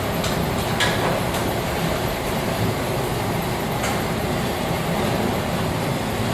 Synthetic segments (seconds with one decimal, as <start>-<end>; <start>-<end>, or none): 1.4-4.3